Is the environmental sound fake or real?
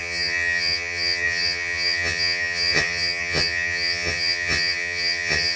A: fake